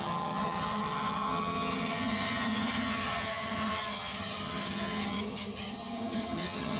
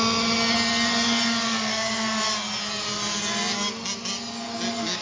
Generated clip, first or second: first